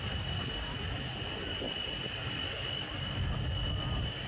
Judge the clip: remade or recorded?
recorded